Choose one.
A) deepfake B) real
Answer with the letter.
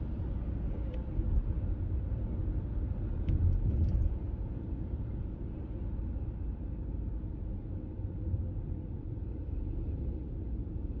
B